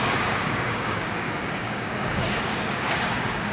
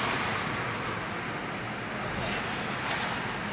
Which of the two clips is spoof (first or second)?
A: first